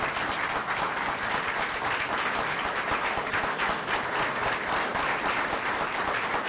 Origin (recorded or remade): recorded